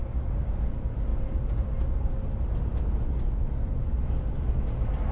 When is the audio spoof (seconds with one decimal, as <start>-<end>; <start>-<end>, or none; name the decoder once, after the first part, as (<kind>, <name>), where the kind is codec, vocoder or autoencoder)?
none